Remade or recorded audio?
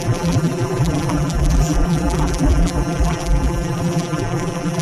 remade